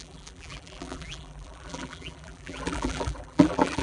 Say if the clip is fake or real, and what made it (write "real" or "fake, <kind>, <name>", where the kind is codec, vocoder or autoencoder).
fake, vocoder, BigVGAN v2